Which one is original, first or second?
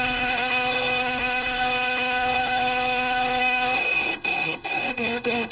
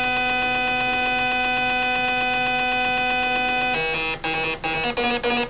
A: second